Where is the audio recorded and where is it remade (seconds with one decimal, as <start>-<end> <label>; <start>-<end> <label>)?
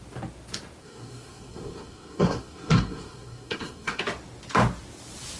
0.0-0.8 recorded; 0.8-4.0 remade; 4.0-5.4 recorded